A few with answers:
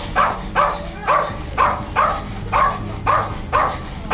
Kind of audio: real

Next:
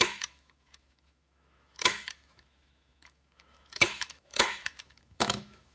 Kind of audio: fake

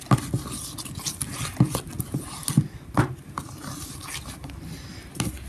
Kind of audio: real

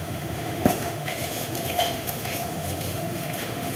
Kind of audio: fake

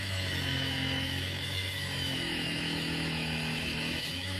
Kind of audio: fake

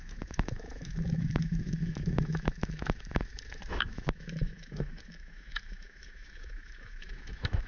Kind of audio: fake